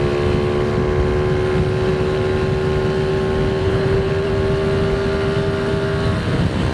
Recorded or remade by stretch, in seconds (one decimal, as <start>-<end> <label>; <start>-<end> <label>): 0.0-3.6 recorded; 3.6-4.1 remade; 4.1-6.7 recorded

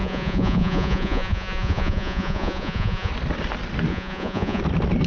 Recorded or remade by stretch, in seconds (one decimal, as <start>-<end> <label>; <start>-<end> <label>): 0.0-3.1 remade; 3.1-3.9 recorded; 3.9-4.6 remade; 4.6-5.1 recorded

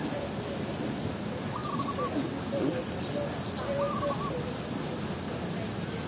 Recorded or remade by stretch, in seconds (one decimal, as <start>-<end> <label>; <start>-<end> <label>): 0.0-6.1 recorded

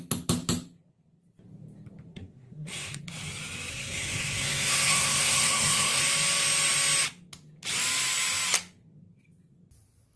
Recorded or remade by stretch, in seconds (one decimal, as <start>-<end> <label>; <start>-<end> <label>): 0.0-2.1 recorded; 2.1-3.0 remade; 3.0-3.7 recorded; 3.7-6.0 remade; 6.0-10.2 recorded

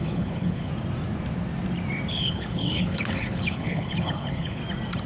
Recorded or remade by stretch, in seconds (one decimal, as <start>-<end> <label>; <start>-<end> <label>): 0.0-0.7 remade; 0.7-2.1 recorded; 2.1-4.6 remade; 4.6-5.1 recorded

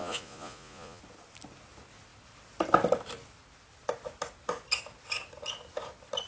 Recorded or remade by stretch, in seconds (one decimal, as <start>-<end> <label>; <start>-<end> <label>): 0.0-1.0 remade; 1.0-6.3 recorded

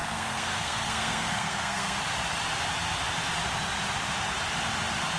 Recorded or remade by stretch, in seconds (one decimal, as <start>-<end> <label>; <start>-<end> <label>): 0.0-2.0 remade; 2.0-5.2 recorded

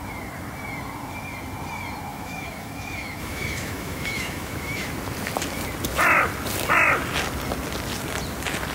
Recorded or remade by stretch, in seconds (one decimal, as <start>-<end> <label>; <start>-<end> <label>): 0.0-2.1 recorded; 2.1-4.9 remade; 4.9-8.7 recorded